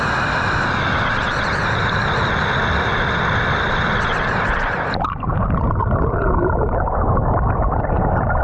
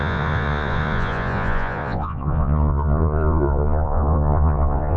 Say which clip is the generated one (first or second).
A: second